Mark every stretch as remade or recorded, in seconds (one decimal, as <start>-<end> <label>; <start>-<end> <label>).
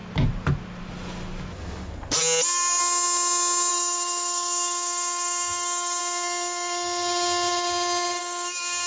0.0-3.7 recorded; 3.7-6.0 remade; 6.0-8.2 recorded; 8.2-8.9 remade